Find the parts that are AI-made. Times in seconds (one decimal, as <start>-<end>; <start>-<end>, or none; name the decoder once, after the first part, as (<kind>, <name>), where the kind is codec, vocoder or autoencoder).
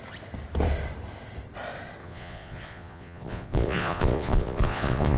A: 2.0-5.2 (vocoder, Vocos)